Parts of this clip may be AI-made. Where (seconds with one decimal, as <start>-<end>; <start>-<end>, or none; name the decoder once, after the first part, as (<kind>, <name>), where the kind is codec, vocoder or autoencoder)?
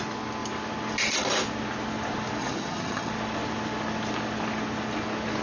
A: 2.4-3.1 (vocoder, HiFi-GAN)